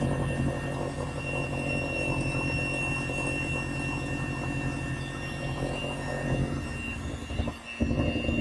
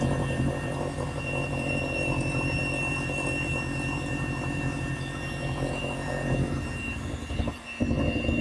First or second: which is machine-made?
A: second